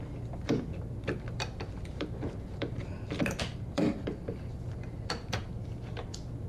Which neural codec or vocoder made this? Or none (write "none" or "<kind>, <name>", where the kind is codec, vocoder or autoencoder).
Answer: vocoder, BigVGAN v2